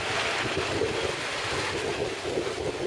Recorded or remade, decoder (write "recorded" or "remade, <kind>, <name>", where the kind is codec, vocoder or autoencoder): recorded